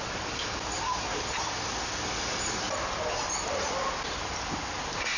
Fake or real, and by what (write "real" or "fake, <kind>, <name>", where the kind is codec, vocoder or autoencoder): real